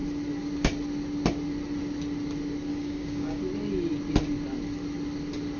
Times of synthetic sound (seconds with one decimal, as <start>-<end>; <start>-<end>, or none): 2.7-3.4